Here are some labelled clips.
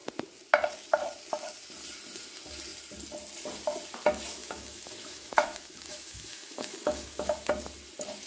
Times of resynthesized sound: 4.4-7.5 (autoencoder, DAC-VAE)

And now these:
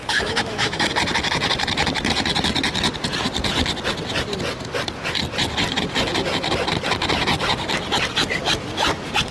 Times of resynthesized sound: 0.0-0.9 (autoencoder, DAC-VAE)